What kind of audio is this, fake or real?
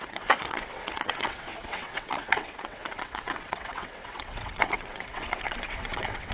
fake